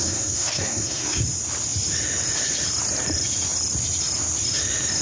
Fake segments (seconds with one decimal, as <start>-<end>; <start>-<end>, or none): 0.0-1.2